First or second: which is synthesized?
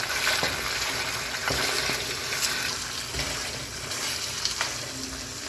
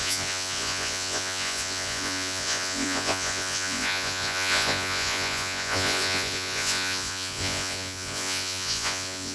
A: second